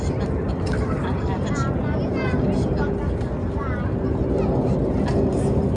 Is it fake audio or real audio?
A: real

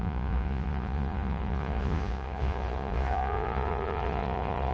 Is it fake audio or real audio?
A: fake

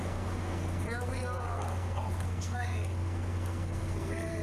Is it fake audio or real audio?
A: fake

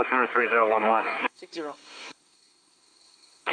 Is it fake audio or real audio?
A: fake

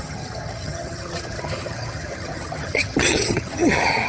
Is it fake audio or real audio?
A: fake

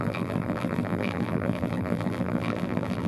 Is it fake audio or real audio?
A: fake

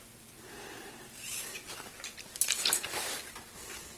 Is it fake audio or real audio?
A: real